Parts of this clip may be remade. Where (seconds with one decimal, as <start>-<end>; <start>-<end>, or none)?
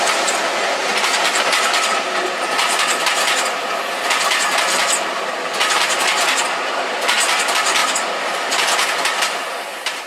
none